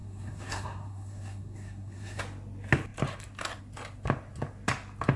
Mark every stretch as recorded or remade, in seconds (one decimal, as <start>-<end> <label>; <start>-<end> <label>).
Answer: 0.0-2.2 remade; 2.2-5.2 recorded